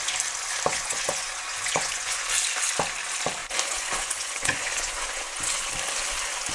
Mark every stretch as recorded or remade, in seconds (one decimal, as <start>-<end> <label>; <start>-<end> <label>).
0.0-0.7 recorded; 0.7-2.2 remade; 2.2-3.4 recorded; 3.4-5.7 remade; 5.7-6.5 recorded